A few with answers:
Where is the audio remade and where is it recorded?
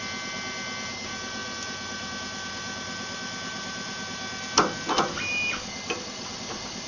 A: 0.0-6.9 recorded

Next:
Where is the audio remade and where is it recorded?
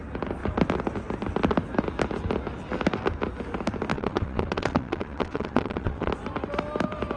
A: 0.0-3.9 recorded; 3.9-6.1 remade; 6.1-7.2 recorded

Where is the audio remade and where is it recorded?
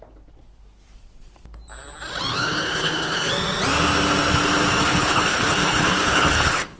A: 0.0-2.3 recorded; 2.3-3.3 remade; 3.3-4.8 recorded; 4.8-6.8 remade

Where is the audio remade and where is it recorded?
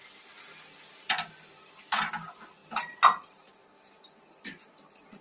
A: 0.0-5.2 recorded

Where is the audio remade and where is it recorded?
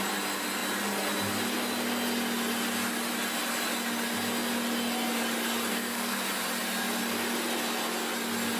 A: 0.0-5.7 recorded; 5.7-6.2 remade; 6.2-8.6 recorded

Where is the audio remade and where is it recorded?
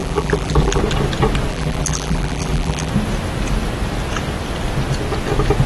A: 0.0-0.8 remade; 0.8-1.5 recorded; 1.5-2.9 remade; 2.9-5.7 recorded